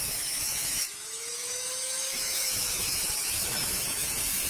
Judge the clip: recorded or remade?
remade